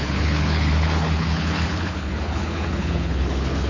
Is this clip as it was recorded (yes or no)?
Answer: no